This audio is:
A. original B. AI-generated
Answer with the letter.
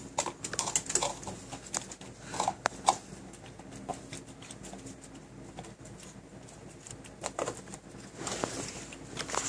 A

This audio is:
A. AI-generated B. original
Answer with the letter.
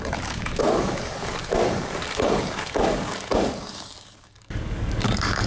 A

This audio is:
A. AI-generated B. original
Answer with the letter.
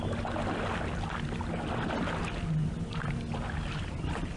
B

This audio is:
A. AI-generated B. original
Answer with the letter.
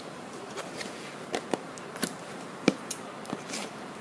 A